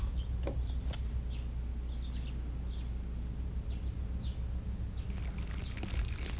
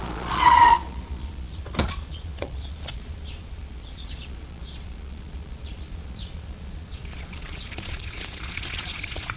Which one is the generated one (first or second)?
second